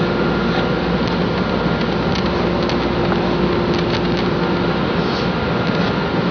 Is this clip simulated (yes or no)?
no